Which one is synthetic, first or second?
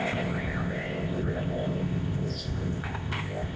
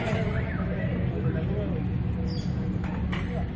first